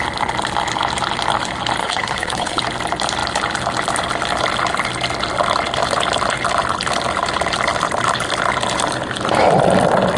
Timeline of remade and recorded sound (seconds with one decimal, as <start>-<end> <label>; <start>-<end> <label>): 0.0-1.8 recorded; 1.8-2.6 remade; 2.6-10.2 recorded